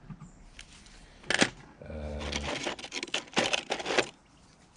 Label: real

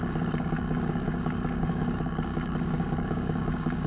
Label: fake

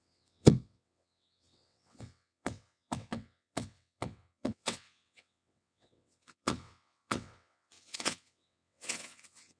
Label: fake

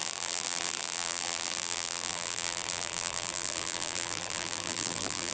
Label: fake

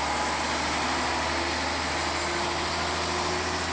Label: real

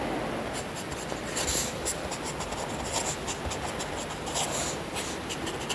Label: real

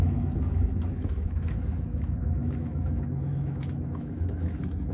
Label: fake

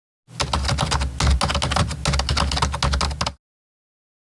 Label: real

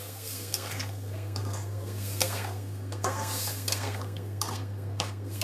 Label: fake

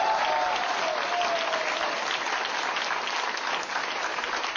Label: real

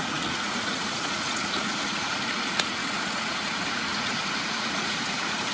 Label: fake